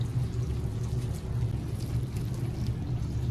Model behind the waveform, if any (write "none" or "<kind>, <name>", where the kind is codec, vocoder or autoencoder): none